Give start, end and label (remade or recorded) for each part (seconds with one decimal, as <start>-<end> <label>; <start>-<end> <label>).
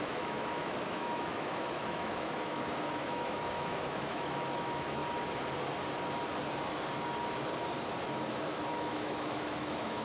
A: 0.0-5.0 remade; 5.0-8.3 recorded; 8.3-10.0 remade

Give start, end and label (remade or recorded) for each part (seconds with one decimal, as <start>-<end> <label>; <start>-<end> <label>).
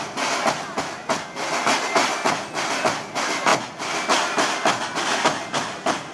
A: 0.0-6.1 recorded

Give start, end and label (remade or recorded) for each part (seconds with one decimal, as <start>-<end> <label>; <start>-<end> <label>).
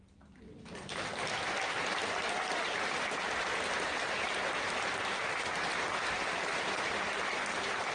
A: 0.0-3.5 recorded; 3.5-7.2 remade; 7.2-7.9 recorded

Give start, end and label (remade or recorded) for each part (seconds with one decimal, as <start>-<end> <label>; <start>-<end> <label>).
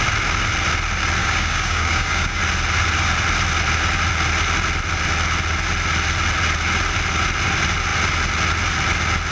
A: 0.0-1.2 recorded; 1.2-2.4 remade; 2.4-9.3 recorded